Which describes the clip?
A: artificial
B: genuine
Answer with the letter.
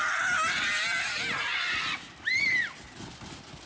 B